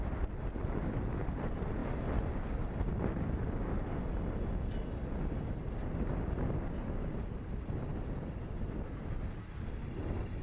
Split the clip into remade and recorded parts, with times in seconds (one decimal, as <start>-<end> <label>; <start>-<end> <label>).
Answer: 0.0-10.4 recorded